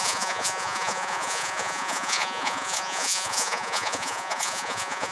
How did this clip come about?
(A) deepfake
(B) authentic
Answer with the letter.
A